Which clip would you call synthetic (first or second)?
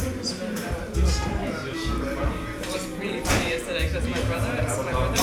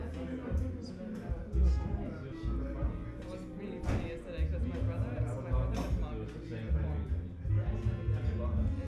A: first